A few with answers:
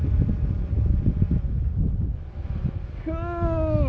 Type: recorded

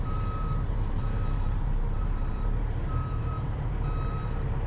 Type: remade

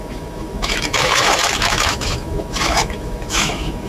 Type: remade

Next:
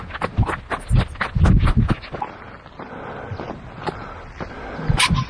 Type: recorded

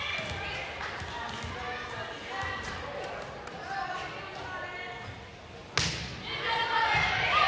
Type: recorded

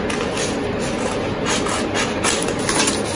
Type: recorded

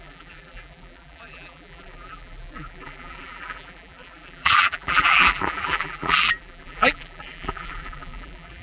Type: remade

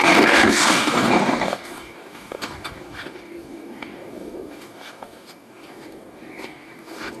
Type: remade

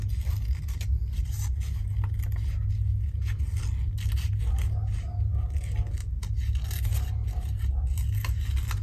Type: recorded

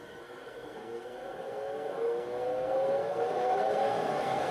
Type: remade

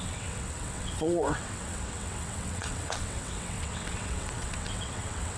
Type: remade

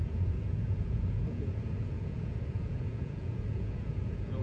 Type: remade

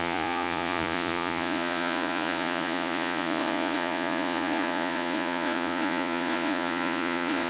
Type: remade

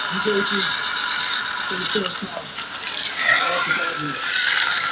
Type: recorded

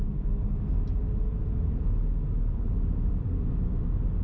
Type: recorded